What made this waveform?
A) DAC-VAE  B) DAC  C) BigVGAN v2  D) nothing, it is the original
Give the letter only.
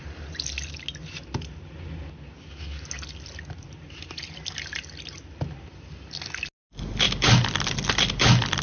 D